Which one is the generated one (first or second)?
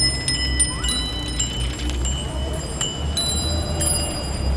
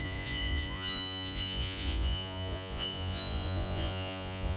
second